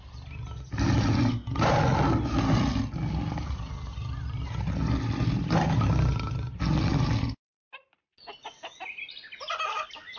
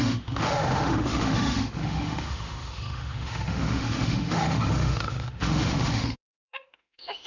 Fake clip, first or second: second